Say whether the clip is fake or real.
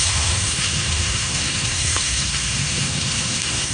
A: fake